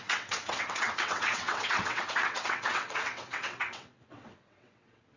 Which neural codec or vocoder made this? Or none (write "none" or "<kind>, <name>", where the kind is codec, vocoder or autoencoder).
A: vocoder, WaveNeXt